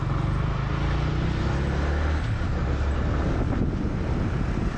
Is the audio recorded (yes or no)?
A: yes